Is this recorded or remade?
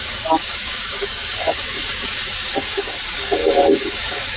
remade